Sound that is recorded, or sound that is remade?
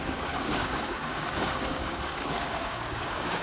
remade